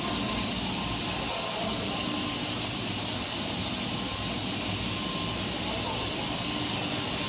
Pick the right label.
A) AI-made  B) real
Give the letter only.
B